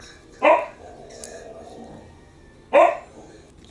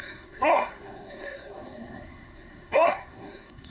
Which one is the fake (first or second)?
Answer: second